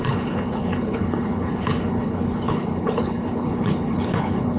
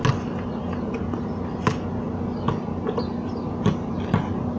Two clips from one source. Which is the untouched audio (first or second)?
second